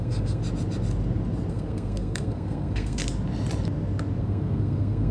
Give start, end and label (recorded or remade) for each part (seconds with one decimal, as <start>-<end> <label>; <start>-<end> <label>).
0.0-0.4 remade; 0.4-1.5 recorded; 1.5-3.0 remade; 3.0-4.2 recorded; 4.2-5.1 remade

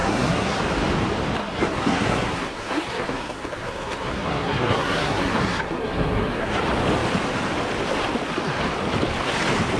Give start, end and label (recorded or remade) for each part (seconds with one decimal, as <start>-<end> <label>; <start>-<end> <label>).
0.0-0.6 remade; 0.6-1.4 recorded; 1.4-6.6 remade; 6.6-9.8 recorded

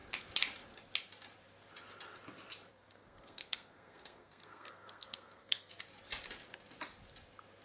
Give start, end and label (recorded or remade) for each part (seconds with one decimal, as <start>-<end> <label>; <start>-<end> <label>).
0.0-2.7 recorded; 2.7-5.7 remade; 5.7-7.6 recorded